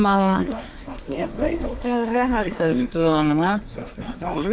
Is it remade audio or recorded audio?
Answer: remade